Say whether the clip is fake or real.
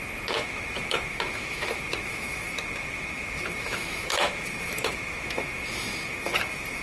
fake